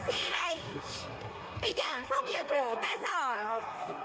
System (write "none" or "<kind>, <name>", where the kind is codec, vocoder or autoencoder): codec, SNAC